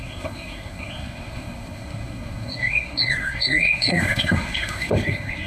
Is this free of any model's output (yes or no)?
no